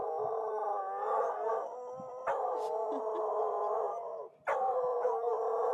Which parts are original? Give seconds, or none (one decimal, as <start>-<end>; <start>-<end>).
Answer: 0.8-4.9